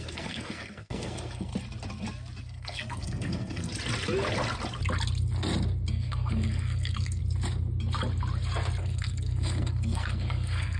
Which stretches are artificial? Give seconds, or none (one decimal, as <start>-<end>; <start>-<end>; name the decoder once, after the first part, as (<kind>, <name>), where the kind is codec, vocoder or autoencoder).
0.0-1.5 (codec, SNAC); 2.4-3.7; 5.9-7.2; 8.8-10.8